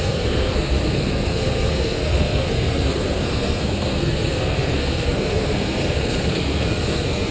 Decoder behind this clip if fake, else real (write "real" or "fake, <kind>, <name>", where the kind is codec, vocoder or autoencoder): fake, codec, SNAC